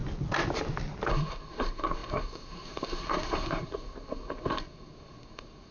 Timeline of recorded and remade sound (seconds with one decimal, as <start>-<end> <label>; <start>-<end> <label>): 0.0-1.1 recorded; 1.1-5.7 remade